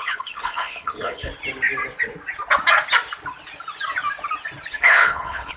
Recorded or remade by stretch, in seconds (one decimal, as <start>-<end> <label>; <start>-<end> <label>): 0.0-1.3 remade; 1.3-4.7 recorded; 4.7-5.6 remade